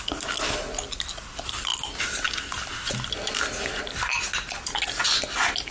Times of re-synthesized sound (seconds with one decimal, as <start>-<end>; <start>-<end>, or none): none